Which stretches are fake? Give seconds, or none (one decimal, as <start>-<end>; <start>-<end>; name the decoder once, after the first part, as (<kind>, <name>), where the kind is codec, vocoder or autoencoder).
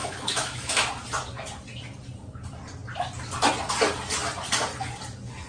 0.0-0.9 (autoencoder, DAC-VAE)